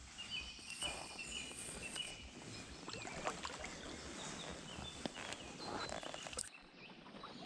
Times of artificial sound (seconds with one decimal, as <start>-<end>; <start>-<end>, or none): 0.6-2.1; 6.4-7.5